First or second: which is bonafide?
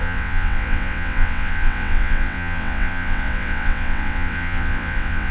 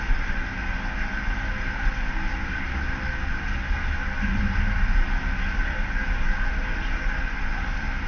second